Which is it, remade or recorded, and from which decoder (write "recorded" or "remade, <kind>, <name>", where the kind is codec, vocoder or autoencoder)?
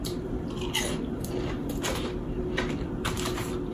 remade, vocoder, BigVGAN v2